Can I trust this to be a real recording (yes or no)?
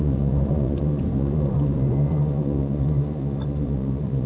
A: no